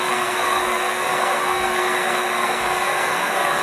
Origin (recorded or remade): remade